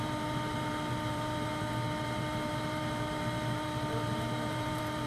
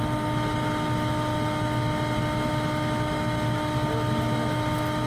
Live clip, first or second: second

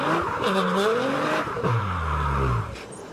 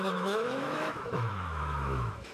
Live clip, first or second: first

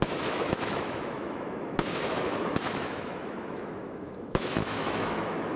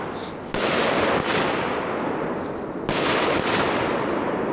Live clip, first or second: second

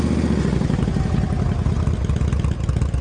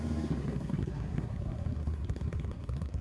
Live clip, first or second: first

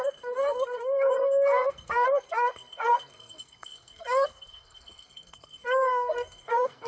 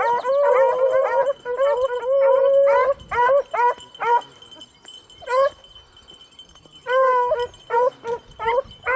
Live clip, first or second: second